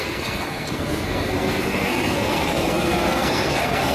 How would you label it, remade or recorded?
remade